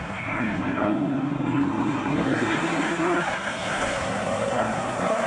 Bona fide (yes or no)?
no